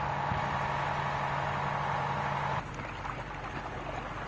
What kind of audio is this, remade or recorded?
recorded